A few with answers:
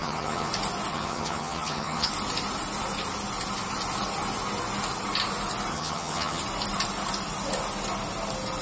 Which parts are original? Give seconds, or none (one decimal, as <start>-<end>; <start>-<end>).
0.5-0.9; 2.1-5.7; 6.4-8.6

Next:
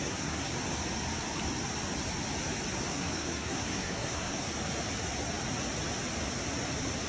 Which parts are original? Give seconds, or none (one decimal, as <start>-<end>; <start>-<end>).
0.5-2.9; 4.5-7.1

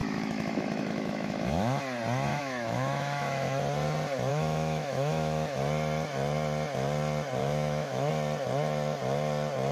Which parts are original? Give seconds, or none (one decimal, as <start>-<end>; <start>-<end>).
1.8-2.3; 3.6-4.3; 5.6-7.4; 8.1-9.7